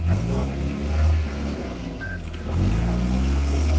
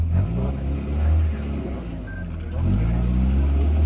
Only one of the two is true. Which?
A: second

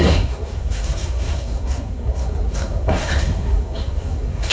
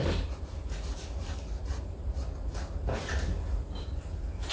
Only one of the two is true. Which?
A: second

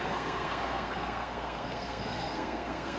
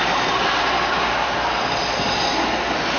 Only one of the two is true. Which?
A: second